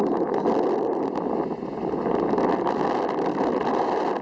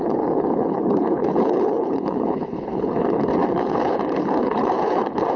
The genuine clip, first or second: first